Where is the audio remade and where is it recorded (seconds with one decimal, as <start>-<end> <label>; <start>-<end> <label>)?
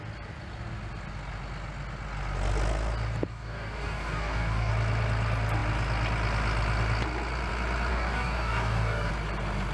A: 0.0-3.3 recorded; 3.3-4.7 remade; 4.7-7.9 recorded; 7.9-9.1 remade; 9.1-9.7 recorded